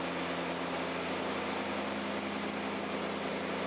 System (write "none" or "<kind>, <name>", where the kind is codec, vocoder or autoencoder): none